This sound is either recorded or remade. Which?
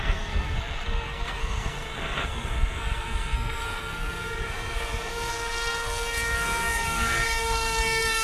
remade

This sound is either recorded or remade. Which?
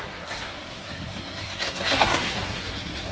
remade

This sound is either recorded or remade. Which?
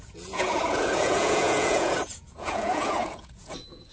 remade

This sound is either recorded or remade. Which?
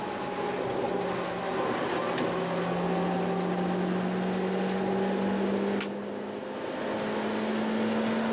recorded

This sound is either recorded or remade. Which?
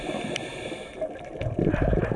recorded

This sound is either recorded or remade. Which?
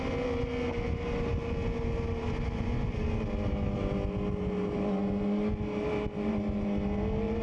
recorded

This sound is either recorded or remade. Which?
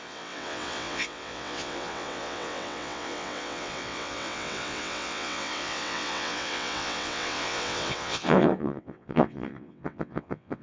remade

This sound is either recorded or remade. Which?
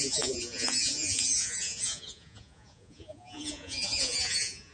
remade